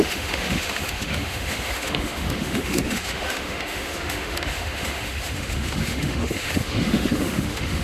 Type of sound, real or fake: fake